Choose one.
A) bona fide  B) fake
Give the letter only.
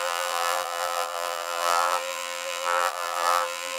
B